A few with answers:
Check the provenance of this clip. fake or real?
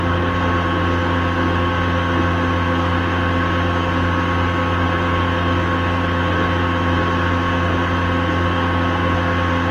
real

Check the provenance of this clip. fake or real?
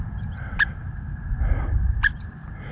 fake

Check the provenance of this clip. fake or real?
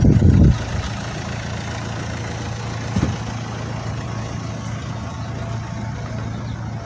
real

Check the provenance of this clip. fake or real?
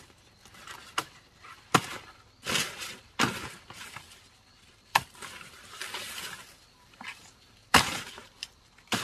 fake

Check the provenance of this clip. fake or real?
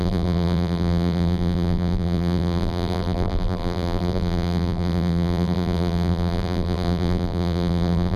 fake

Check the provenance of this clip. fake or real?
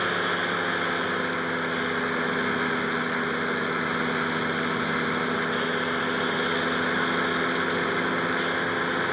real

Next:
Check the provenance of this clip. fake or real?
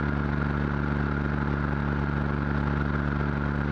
real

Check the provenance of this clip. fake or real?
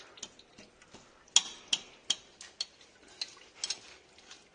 real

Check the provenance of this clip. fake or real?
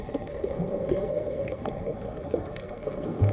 fake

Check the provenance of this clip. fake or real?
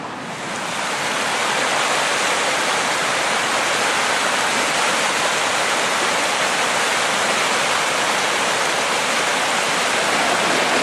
real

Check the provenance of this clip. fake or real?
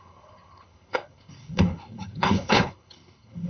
fake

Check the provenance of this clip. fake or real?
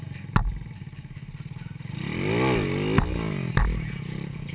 real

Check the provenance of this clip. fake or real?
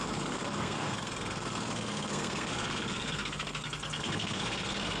fake